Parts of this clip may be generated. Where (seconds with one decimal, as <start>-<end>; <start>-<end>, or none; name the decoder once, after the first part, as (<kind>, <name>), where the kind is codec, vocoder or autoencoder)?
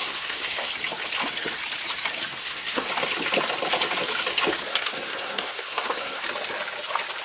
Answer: 0.0-0.7 (codec, SNAC); 2.4-2.9; 4.7-6.2